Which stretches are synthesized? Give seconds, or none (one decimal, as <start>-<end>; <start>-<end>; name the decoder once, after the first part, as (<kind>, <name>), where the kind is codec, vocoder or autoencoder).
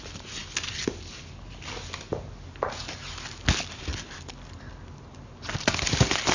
none